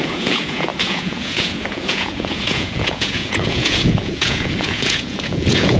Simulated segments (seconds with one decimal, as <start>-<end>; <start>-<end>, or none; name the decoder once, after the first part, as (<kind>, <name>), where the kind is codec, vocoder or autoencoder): 0.0-5.8 (vocoder, Vocos)